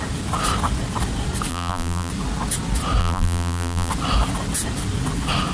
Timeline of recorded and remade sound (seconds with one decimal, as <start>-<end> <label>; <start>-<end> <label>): 0.0-1.5 recorded; 1.5-2.1 remade; 2.1-3.0 recorded; 3.0-3.9 remade; 3.9-5.5 recorded